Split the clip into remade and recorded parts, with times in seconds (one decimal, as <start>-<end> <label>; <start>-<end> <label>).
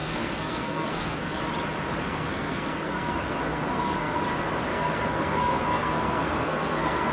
0.0-1.4 remade; 1.4-2.0 recorded; 2.0-4.2 remade; 4.2-4.7 recorded; 4.7-7.1 remade